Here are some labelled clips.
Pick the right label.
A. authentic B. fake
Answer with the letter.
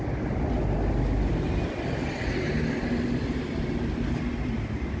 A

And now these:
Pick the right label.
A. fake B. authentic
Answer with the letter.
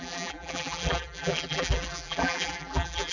A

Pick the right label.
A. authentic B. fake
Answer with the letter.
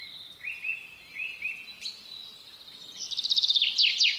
A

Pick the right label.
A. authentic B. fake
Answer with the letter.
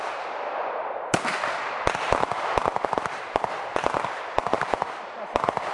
B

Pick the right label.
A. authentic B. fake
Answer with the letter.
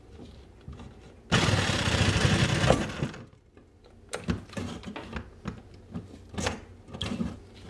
A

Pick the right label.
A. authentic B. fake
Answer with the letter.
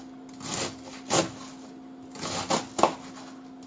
A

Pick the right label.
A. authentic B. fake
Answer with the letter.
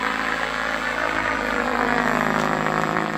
B